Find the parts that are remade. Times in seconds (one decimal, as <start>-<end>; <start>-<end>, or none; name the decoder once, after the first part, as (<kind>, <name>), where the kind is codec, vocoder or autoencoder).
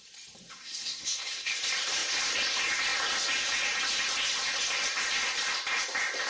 0.5-1.5 (codec, SNAC)